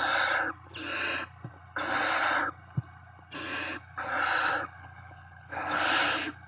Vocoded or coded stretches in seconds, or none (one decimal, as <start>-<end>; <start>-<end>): 4.8-5.8